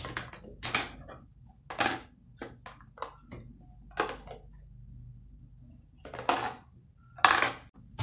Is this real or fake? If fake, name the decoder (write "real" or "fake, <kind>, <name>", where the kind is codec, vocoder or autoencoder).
real